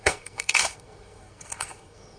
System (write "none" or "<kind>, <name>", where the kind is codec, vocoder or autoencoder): codec, SNAC